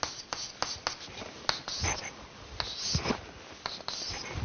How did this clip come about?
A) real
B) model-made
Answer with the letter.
A